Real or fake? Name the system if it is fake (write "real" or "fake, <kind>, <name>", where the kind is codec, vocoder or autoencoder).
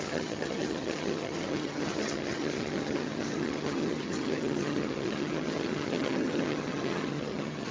fake, vocoder, HiFi-GAN